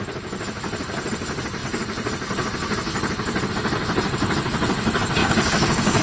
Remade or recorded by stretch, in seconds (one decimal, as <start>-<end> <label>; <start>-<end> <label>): 0.0-5.2 recorded; 5.2-6.0 remade